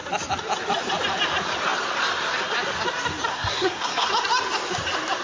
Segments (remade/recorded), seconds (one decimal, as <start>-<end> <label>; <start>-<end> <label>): 0.0-3.3 recorded; 3.3-4.1 remade; 4.1-5.2 recorded